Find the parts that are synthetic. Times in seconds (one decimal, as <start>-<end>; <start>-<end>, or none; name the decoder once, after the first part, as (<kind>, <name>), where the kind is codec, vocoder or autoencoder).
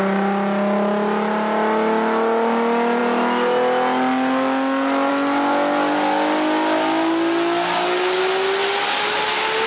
none